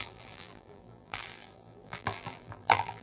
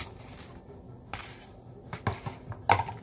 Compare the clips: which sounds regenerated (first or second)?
first